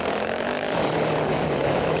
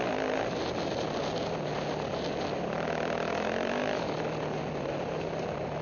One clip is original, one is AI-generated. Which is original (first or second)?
second